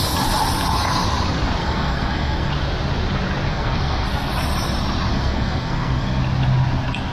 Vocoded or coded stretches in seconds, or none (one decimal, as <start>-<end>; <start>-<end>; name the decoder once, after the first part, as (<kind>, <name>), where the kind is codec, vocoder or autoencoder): 1.6-2.5 (codec, SNAC); 3.5-4.3; 5.1-6.2